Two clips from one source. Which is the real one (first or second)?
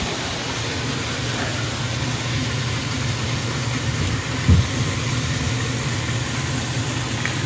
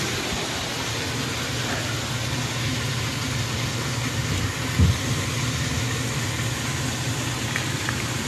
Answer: second